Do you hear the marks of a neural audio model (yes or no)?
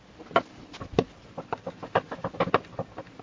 no